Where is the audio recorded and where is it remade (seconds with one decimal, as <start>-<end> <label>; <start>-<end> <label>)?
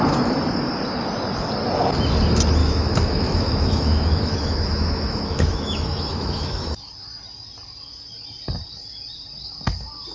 0.0-2.6 recorded; 2.6-6.9 remade; 6.9-10.1 recorded